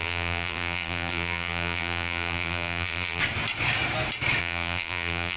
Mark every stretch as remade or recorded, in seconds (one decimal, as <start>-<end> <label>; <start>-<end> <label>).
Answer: 0.0-3.2 remade; 3.2-4.4 recorded; 4.4-5.4 remade